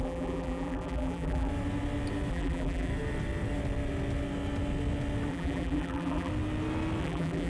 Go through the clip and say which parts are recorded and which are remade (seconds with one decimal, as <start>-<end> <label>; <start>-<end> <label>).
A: 0.0-1.5 remade; 1.5-2.3 recorded; 2.3-2.9 remade; 2.9-5.3 recorded; 5.3-6.3 remade; 6.3-7.0 recorded; 7.0-7.5 remade